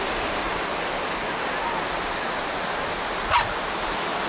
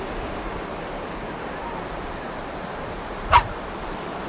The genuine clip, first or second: first